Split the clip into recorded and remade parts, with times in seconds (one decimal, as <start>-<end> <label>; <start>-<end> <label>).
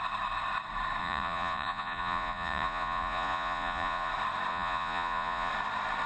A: 0.0-1.0 recorded; 1.0-4.1 remade; 4.1-4.5 recorded; 4.5-5.5 remade; 5.5-6.1 recorded